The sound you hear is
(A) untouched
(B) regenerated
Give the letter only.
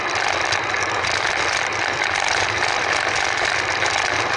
A